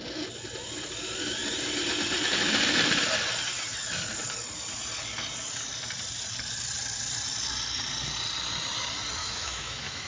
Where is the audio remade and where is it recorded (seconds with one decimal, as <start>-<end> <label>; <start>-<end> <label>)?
0.0-9.2 recorded; 9.2-10.1 remade